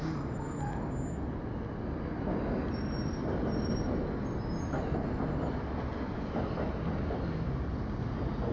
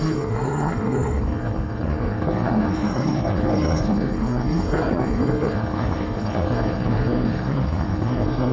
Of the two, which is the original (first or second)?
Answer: first